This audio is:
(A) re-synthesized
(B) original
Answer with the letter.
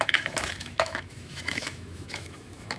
A